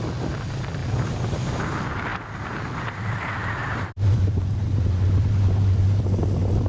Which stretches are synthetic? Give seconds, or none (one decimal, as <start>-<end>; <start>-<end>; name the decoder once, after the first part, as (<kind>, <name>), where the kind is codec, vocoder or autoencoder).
0.8-1.6 (vocoder, BigVGAN v2); 2.1-2.8; 3.6-6.0